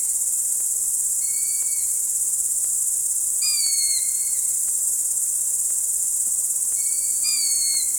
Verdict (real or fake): real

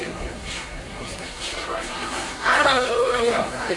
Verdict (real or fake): fake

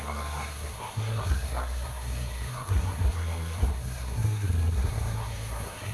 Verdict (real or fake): fake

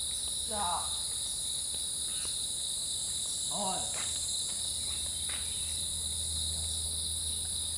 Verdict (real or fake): real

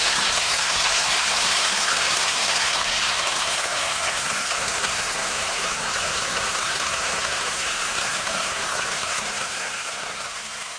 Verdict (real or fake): fake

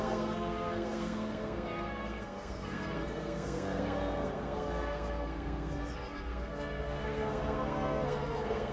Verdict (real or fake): fake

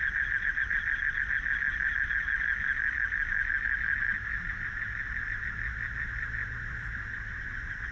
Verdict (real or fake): real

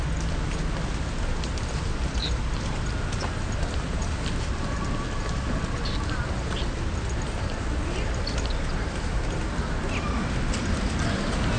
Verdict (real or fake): real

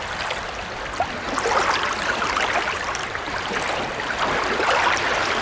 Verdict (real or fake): real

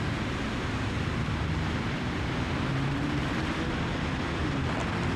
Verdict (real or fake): real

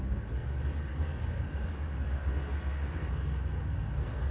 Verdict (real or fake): fake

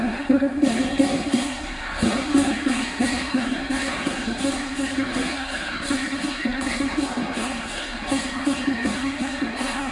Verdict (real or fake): fake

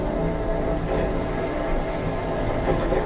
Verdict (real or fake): real